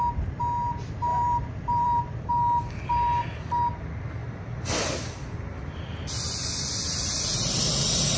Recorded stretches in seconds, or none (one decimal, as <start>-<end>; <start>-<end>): 0.0-1.1; 2.3-4.2; 7.0-8.2